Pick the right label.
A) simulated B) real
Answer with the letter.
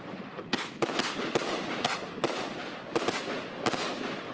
B